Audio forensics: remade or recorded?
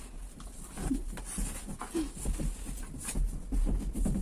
recorded